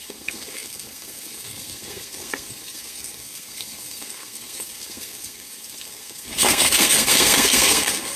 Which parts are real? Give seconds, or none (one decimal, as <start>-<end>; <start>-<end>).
none